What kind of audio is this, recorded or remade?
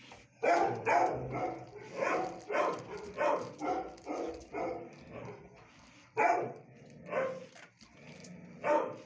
recorded